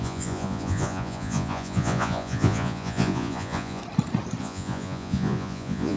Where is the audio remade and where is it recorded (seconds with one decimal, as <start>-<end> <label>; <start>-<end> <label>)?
0.0-3.8 remade; 3.8-4.4 recorded; 4.4-6.0 remade